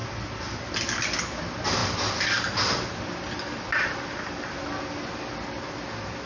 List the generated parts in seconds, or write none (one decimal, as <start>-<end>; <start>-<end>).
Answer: none